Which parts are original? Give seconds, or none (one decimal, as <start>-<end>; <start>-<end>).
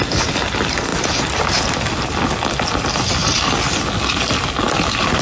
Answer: 0.0-5.2